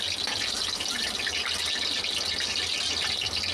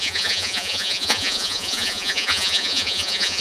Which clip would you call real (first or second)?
first